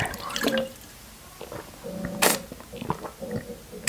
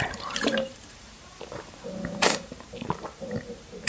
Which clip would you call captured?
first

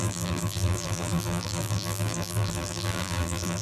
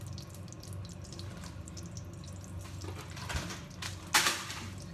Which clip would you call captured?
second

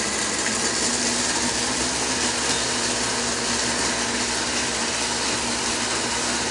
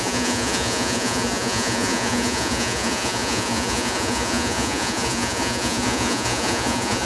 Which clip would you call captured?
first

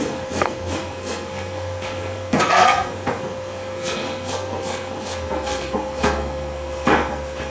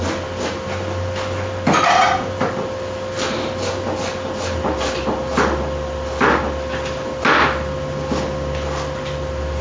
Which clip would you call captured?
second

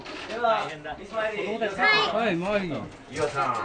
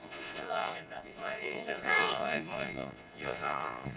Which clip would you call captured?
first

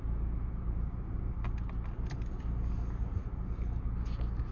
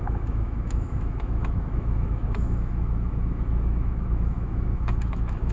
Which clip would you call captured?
first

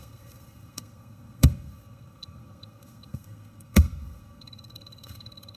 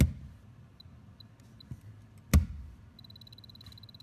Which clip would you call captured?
second